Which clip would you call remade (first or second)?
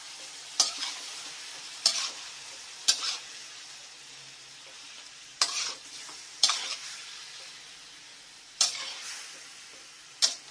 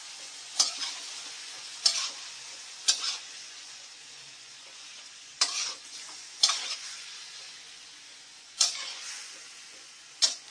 second